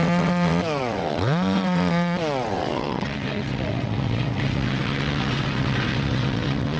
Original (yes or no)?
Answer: no